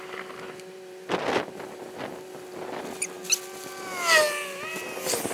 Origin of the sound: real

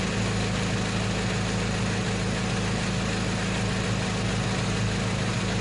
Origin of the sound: real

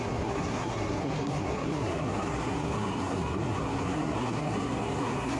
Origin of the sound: fake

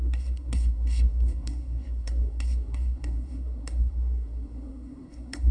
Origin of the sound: fake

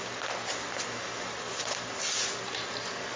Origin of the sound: real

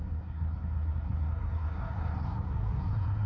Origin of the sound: fake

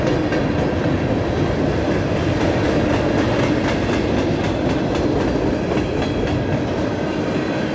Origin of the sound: real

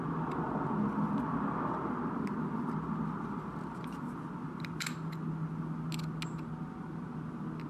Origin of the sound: real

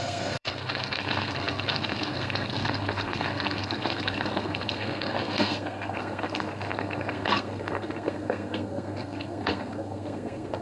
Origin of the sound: fake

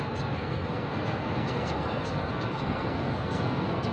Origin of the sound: fake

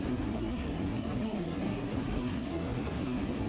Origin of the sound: fake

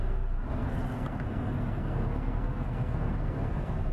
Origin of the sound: fake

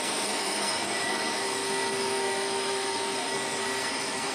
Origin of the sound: fake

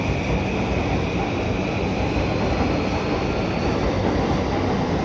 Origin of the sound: real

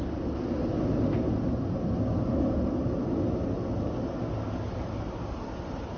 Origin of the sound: real